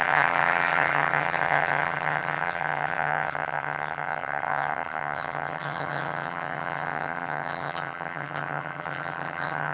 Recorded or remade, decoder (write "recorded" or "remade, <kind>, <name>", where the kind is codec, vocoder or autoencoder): remade, vocoder, HiFi-GAN